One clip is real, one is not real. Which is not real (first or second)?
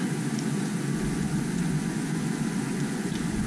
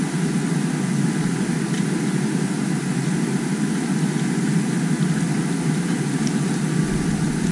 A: first